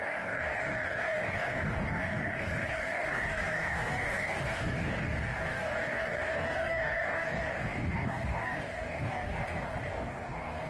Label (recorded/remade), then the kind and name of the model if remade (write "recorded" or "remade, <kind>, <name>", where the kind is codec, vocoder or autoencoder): remade, codec, DAC